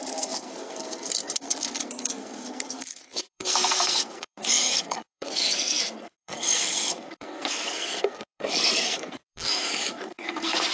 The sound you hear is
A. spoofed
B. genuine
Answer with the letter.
A